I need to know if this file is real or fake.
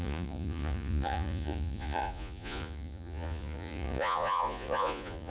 fake